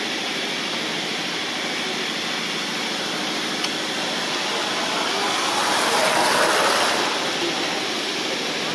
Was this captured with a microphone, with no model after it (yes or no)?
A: yes